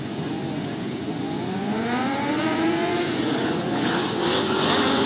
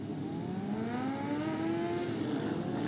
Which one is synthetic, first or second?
first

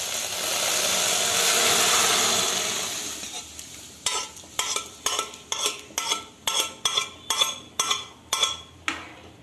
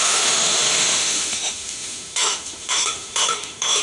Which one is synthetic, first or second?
second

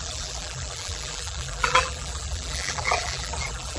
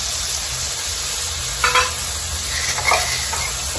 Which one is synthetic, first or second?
first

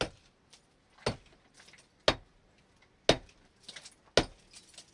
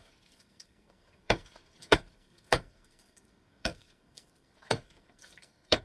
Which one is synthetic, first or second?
second